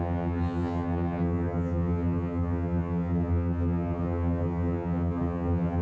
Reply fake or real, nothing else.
fake